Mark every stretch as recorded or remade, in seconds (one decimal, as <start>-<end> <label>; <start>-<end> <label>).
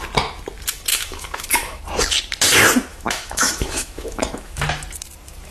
0.0-0.9 recorded; 0.9-1.8 remade; 1.8-2.9 recorded; 2.9-4.6 remade; 4.6-5.5 recorded